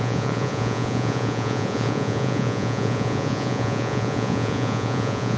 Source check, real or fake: fake